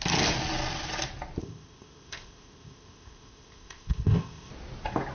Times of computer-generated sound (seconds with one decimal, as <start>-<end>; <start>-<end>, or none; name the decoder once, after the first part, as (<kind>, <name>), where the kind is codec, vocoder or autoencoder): 1.4-4.5 (codec, ZipCodec)